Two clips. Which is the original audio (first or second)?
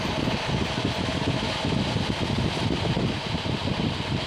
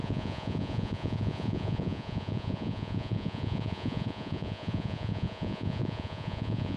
first